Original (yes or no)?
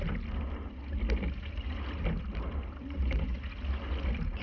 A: yes